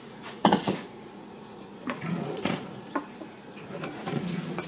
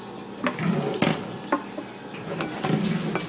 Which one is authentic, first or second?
second